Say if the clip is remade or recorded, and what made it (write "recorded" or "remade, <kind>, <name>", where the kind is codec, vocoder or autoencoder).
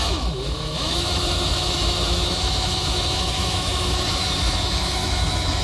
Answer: remade, autoencoder, DAC-VAE